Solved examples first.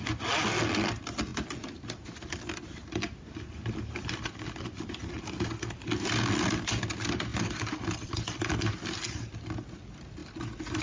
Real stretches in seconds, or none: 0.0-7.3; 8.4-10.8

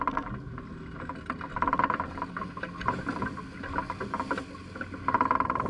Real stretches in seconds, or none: 0.0-5.7